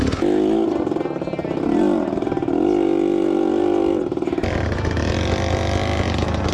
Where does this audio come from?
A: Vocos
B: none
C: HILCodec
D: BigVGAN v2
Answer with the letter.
B